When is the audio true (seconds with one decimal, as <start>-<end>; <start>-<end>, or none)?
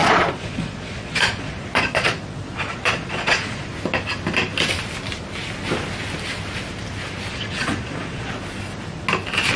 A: 3.7-7.3; 8.3-9.6